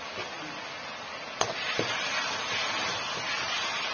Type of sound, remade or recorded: recorded